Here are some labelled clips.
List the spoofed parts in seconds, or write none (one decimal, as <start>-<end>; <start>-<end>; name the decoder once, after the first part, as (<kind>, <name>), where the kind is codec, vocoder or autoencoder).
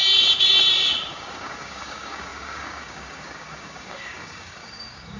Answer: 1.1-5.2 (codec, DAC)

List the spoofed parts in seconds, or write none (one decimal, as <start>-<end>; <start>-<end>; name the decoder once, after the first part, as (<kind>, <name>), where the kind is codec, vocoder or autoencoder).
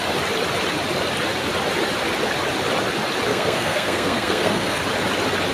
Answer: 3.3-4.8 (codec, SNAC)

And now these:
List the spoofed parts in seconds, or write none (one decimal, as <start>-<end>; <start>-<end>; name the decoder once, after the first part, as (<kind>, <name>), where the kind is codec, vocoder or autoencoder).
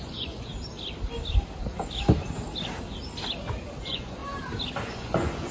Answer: 0.0-0.5 (vocoder, Vocos); 3.8-4.2; 4.8-5.5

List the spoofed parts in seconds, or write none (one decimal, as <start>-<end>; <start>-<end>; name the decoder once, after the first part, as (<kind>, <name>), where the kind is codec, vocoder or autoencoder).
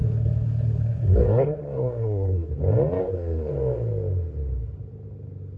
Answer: 0.0-2.5 (codec, SNAC); 3.0-3.5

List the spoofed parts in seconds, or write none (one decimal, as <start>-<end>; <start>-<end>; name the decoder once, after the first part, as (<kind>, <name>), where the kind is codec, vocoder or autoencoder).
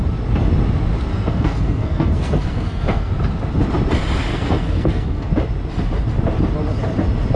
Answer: 1.1-3.1 (codec, SNAC); 4.3-5.3